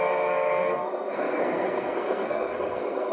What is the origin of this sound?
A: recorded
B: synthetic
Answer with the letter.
B